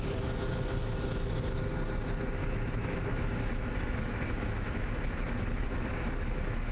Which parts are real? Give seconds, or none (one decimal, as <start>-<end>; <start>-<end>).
0.0-2.4